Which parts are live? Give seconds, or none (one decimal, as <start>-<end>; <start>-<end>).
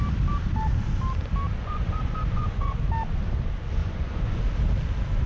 0.0-1.6; 2.8-3.8; 4.4-5.3